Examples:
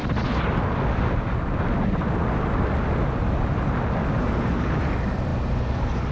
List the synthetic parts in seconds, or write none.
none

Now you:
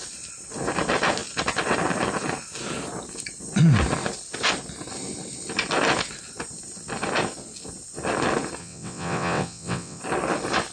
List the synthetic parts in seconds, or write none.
8.6-10.0